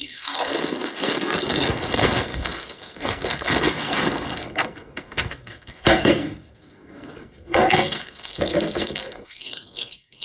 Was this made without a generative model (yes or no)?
no